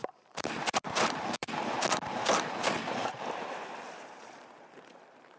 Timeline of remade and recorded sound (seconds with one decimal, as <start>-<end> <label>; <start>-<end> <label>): 0.0-1.8 remade; 1.8-3.0 recorded; 3.0-4.6 remade; 4.6-5.4 recorded